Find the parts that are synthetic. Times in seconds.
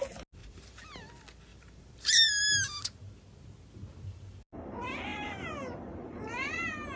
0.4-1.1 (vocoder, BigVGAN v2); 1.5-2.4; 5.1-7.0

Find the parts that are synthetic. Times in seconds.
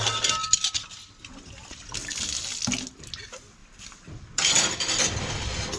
2.0-2.5 (vocoder, BigVGAN v2); 3.6-4.9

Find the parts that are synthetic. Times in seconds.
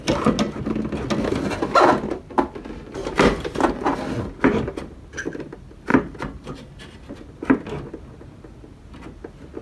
3.0-4.0 (vocoder, BigVGAN v2); 5.9-7.1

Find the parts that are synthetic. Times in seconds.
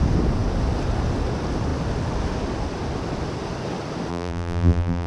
4.1-5.1 (vocoder, BigVGAN v2)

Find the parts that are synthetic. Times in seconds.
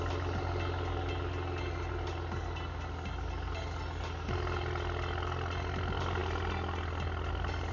none